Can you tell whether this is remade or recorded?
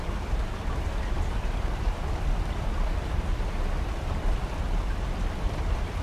remade